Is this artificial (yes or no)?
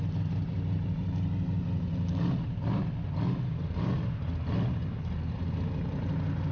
no